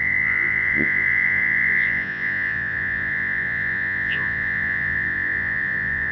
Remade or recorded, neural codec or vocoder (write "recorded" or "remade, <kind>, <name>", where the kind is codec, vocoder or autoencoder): remade, vocoder, Vocos